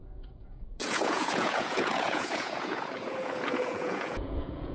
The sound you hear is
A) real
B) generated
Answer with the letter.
B